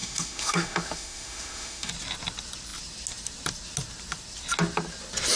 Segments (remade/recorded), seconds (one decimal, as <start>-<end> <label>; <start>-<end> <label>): 0.0-1.9 remade; 1.9-5.4 recorded